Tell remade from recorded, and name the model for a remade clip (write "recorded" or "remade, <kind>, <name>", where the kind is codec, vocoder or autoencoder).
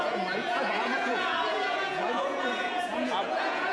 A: remade, vocoder, Vocos